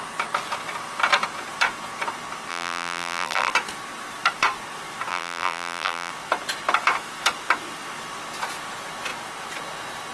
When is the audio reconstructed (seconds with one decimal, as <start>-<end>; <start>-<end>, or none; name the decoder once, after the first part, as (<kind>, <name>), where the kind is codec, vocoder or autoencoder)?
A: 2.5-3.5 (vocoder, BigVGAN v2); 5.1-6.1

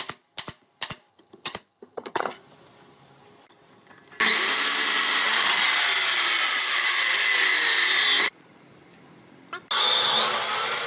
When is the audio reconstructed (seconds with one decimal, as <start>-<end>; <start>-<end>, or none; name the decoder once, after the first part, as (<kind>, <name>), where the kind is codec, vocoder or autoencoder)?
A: 1.1-2.3 (vocoder, HiFi-GAN)

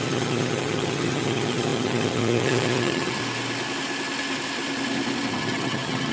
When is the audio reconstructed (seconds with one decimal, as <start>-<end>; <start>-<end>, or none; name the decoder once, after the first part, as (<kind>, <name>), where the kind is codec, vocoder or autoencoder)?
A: 0.0-3.2 (vocoder, HiFi-GAN); 5.3-6.1